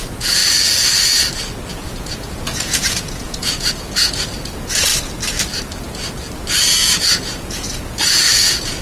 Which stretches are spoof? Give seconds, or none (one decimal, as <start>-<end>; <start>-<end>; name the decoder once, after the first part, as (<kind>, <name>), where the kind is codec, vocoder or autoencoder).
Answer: 0.0-0.4 (vocoder, Vocos); 1.7-4.9; 6.6-8.8